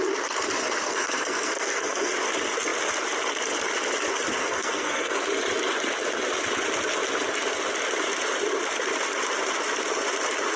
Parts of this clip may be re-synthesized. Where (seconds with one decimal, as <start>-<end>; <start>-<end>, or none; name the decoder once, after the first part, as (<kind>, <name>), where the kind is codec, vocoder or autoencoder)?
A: 0.9-2.1 (codec, SNAC); 4.4-5.2